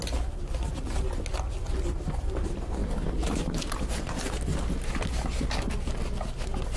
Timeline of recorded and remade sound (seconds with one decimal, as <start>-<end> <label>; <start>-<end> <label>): 0.0-6.8 recorded